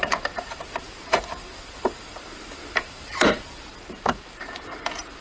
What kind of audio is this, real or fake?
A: fake